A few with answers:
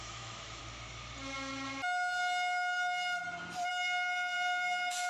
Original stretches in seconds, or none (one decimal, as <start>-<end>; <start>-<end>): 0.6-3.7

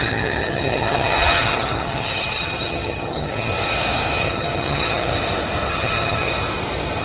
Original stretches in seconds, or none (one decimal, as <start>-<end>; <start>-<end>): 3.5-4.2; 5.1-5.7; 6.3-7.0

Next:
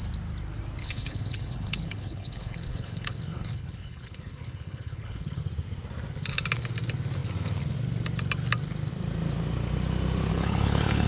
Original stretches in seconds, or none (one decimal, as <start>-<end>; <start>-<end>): 0.0-0.8; 5.4-10.3

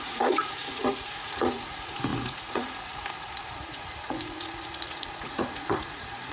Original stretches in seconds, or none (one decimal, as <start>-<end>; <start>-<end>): none

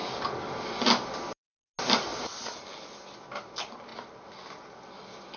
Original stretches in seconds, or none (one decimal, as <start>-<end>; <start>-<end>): 0.0-2.1; 3.2-5.4

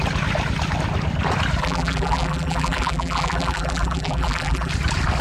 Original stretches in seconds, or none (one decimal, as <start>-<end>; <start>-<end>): 0.0-1.6; 4.7-5.2